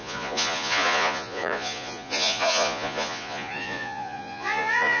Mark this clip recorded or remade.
remade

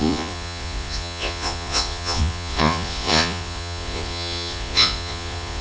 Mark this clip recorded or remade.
remade